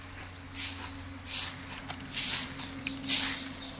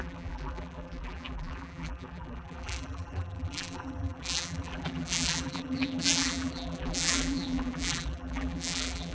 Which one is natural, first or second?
first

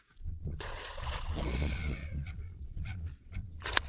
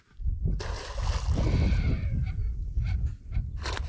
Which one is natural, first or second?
second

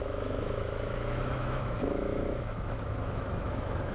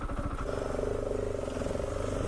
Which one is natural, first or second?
second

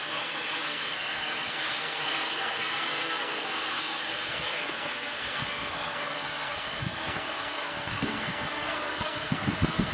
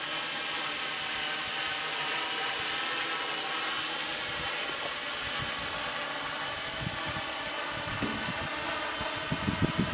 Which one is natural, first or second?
second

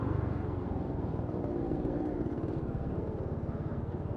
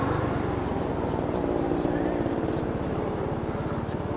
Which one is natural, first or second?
second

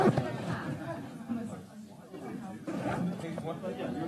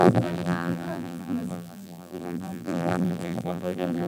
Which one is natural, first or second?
first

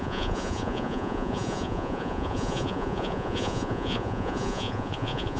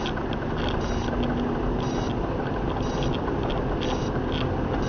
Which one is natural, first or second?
second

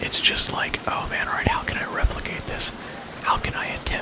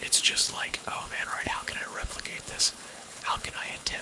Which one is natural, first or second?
first